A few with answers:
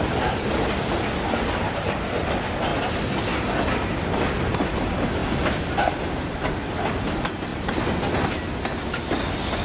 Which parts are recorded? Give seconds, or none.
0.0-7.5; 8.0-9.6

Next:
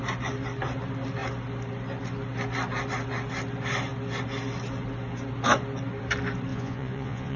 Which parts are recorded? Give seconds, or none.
0.0-6.5

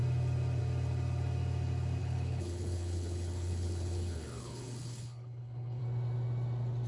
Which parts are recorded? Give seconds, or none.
0.0-2.0; 5.8-6.9

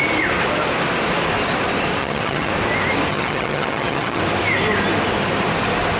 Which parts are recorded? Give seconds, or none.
0.0-2.0; 2.5-3.1; 4.2-6.0

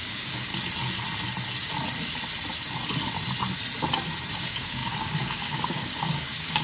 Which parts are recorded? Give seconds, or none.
0.5-4.3

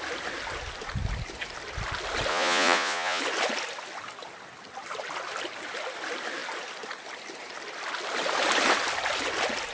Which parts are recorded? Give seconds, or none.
0.0-2.3; 3.2-9.7

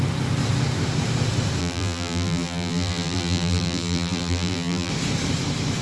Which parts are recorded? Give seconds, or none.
0.0-1.6; 4.9-5.8

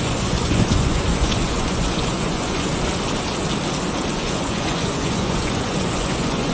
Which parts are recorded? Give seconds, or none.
2.7-4.1